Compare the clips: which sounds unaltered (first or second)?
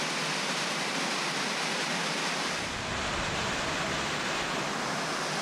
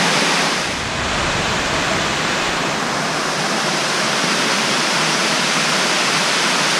first